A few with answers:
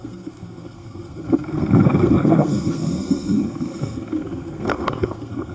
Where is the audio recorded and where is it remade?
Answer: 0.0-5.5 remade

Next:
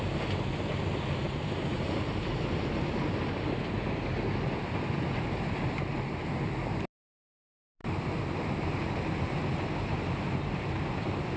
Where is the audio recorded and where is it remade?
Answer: 0.0-11.4 recorded

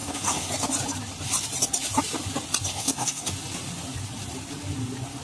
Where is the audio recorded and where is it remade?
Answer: 0.0-0.5 remade; 0.5-2.7 recorded; 2.7-3.3 remade; 3.3-5.2 recorded

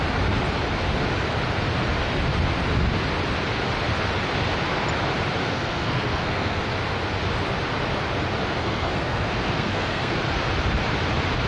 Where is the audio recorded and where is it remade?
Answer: 0.0-5.4 recorded; 5.4-6.6 remade; 6.6-8.6 recorded; 8.6-10.2 remade; 10.2-11.5 recorded

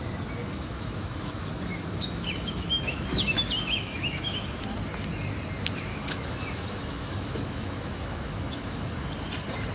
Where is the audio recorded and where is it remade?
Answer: 0.0-0.4 recorded; 0.4-4.6 remade; 4.6-5.9 recorded; 5.9-9.1 remade; 9.1-9.7 recorded

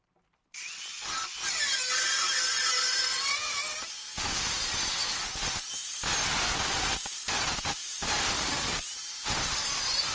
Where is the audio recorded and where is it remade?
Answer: 0.0-10.1 recorded

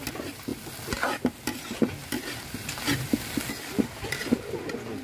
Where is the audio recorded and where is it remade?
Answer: 0.0-5.0 recorded